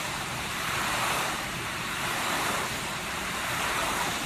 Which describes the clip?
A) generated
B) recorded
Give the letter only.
A